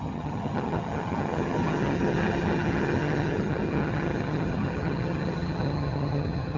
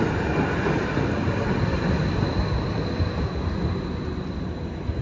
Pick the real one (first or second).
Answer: second